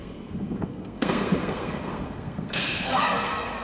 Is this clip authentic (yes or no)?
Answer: no